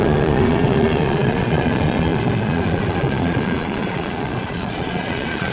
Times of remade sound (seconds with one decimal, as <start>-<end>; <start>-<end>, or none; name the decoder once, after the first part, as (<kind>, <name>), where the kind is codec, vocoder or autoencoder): 0.0-5.5 (vocoder, Vocos)